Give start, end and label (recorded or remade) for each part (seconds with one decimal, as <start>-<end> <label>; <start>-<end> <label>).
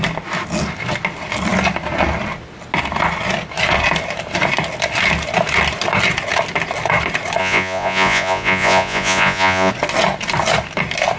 0.0-7.4 recorded; 7.4-9.7 remade; 9.7-11.2 recorded